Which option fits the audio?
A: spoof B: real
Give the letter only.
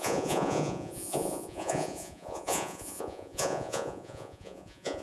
A